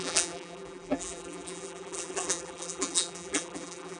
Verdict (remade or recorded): remade